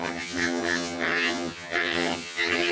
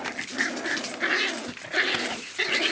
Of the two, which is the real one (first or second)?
second